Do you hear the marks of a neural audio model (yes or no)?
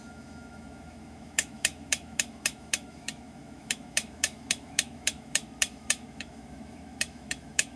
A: yes